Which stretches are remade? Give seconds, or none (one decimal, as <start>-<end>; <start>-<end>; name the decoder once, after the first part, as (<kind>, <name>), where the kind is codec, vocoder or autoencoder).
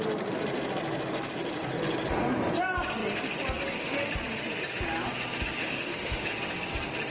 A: 5.6-6.3 (autoencoder, DAC-VAE)